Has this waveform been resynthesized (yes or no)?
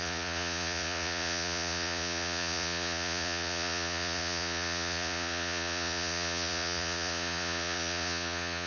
yes